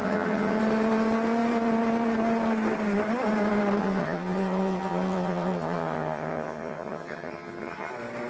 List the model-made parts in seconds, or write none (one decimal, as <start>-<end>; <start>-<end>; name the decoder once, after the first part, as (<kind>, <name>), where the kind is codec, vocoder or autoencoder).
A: 0.0-0.6 (vocoder, HiFi-GAN); 3.8-7.9

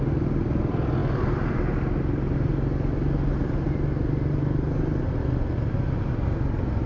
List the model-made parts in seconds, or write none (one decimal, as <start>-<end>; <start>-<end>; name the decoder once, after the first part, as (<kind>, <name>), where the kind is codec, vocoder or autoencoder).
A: none